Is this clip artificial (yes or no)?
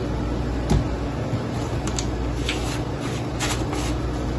no